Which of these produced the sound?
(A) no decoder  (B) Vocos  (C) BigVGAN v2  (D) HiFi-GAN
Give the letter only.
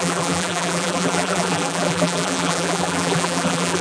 C